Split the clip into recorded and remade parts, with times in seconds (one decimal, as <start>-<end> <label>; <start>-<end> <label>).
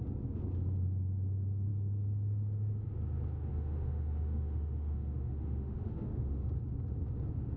0.0-3.5 recorded; 3.5-6.5 remade; 6.5-7.6 recorded